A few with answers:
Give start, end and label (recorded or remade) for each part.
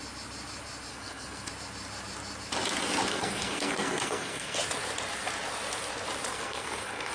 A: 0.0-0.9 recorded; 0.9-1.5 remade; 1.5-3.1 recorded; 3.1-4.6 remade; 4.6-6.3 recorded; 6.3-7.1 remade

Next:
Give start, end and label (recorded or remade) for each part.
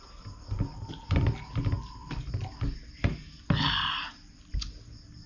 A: 0.0-5.3 recorded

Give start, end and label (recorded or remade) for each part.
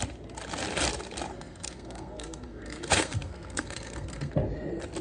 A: 0.0-1.3 recorded; 1.3-4.3 remade; 4.3-5.0 recorded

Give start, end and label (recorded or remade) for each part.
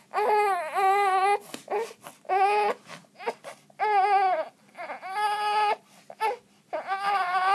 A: 0.0-7.5 recorded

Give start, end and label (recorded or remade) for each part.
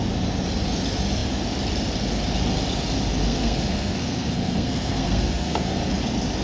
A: 0.0-3.2 recorded; 3.2-5.8 remade; 5.8-6.4 recorded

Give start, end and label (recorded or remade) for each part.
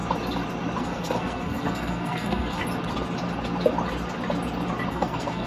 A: 0.0-0.8 recorded; 0.8-2.6 remade; 2.6-4.9 recorded; 4.9-5.5 remade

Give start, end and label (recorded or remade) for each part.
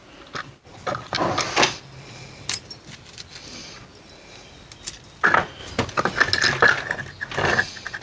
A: 0.0-8.0 recorded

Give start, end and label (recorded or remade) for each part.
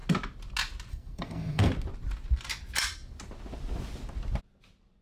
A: 0.0-0.9 recorded; 0.9-1.7 remade; 1.7-5.0 recorded